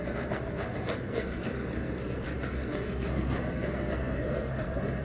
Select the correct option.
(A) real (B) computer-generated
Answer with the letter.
B